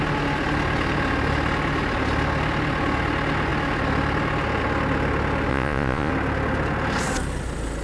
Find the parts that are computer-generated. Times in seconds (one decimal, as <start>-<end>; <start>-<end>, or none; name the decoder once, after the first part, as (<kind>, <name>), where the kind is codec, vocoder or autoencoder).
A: 5.5-6.1 (vocoder, Vocos)

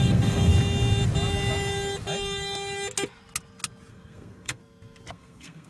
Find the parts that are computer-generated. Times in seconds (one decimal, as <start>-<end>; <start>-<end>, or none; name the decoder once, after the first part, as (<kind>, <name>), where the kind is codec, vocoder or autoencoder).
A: 0.0-0.5 (codec, SNAC); 3.9-4.6; 5.1-5.7

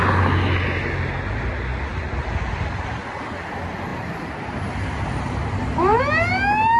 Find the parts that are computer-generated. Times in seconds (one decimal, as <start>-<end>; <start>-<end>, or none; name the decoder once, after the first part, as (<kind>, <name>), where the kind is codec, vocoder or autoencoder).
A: 3.9-6.0 (vocoder, BigVGAN v2)